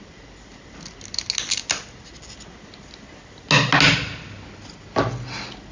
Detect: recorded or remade recorded